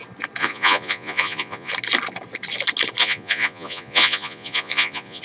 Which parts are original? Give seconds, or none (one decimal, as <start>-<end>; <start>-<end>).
0.0-0.4; 1.7-3.0